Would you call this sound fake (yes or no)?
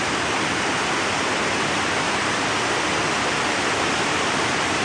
no